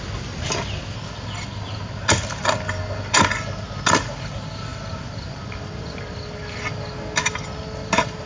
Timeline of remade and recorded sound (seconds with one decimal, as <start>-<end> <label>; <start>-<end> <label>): 0.0-8.3 recorded